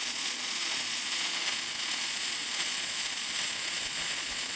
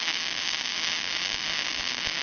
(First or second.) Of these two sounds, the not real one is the first